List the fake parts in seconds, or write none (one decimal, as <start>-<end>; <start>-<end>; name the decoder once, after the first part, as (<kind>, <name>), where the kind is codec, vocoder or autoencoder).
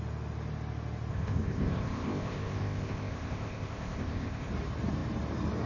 1.1-4.5 (codec, ZipCodec)